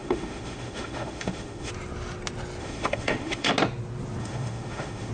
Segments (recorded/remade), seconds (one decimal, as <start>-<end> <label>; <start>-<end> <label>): 0.0-1.7 remade; 1.7-2.6 recorded; 2.6-3.5 remade; 3.5-4.2 recorded; 4.2-5.1 remade